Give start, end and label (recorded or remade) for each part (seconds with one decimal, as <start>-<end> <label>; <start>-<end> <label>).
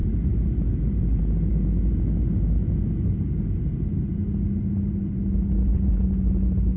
0.0-6.8 recorded